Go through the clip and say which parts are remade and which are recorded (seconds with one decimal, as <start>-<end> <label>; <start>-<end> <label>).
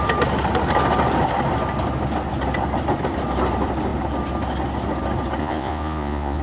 0.0-5.4 recorded; 5.4-6.4 remade